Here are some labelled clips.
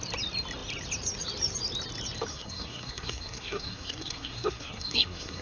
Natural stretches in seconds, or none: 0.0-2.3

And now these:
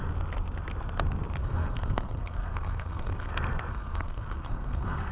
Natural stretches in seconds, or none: 0.0-1.4; 3.3-3.7